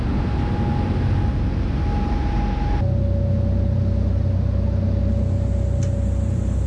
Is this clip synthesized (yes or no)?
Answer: no